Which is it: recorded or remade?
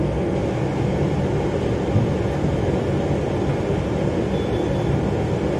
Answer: recorded